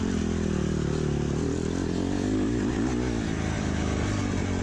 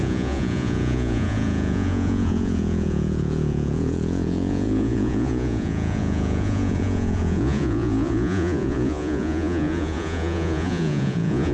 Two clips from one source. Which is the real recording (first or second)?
first